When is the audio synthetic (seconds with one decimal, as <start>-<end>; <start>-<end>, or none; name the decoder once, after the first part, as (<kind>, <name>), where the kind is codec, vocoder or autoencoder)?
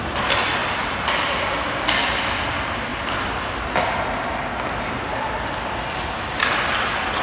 none